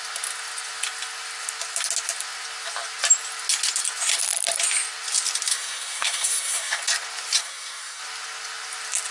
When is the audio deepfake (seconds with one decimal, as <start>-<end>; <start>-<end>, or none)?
5.5-6.8; 7.4-8.0